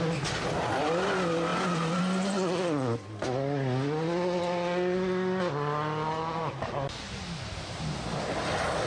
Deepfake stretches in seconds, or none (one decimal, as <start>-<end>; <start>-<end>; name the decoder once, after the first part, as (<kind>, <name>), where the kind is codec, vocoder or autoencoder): none

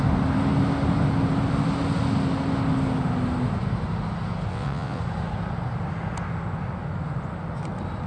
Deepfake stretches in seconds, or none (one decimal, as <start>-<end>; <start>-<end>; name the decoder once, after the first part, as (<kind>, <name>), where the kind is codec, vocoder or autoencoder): 4.5-5.0 (vocoder, WaveNeXt)

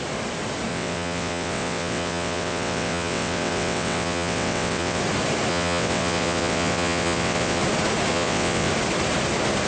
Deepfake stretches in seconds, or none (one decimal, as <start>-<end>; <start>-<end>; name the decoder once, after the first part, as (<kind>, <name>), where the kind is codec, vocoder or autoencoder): 0.7-5.0 (vocoder, WaveNeXt); 5.5-7.6; 8.1-8.7

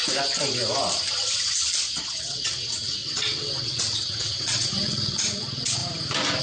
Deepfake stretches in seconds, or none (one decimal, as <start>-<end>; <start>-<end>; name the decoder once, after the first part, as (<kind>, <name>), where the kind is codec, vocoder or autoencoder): 2.0-5.8 (vocoder, WaveNeXt)

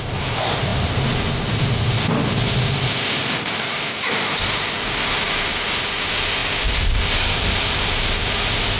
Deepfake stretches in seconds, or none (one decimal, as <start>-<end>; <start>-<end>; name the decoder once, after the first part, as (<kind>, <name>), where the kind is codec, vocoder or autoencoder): none

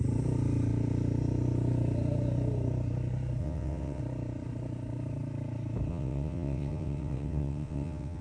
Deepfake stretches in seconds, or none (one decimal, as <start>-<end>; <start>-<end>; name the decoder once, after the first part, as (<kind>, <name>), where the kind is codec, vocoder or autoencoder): 3.4-4.0 (vocoder, WaveNeXt); 5.9-8.2

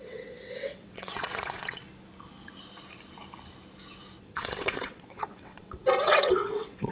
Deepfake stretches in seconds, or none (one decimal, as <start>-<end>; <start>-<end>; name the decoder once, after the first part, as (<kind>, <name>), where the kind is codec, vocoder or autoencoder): 0.0-1.8 (vocoder, WaveNeXt); 4.2-6.9

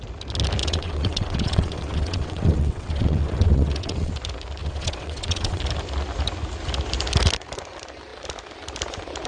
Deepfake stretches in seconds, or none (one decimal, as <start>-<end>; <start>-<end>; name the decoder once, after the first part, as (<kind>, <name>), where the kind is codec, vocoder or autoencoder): 0.6-4.1 (vocoder, WaveNeXt); 4.6-5.6